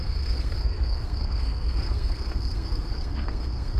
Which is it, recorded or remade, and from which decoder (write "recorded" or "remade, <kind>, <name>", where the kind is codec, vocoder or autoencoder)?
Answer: remade, codec, SNAC